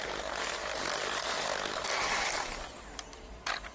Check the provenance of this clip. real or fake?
real